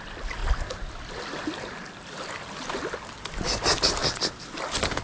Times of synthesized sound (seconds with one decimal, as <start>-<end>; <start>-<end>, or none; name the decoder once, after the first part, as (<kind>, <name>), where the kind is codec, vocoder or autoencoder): none